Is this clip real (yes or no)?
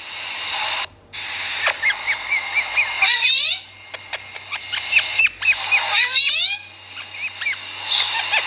yes